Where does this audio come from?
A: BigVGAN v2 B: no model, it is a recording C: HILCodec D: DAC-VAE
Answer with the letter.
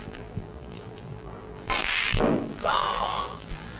A